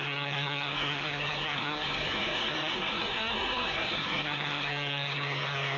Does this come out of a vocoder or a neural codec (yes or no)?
yes